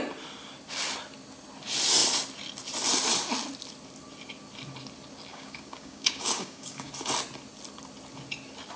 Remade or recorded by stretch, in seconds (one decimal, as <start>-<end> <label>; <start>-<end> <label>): 0.0-5.3 recorded; 5.3-6.9 remade; 6.9-8.8 recorded